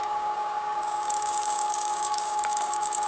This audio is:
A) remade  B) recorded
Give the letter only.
A